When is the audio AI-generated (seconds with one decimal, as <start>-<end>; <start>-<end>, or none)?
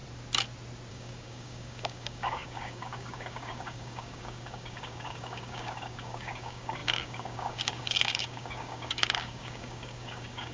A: 0.9-10.5